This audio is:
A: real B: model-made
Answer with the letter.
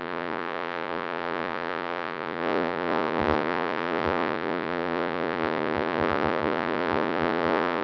B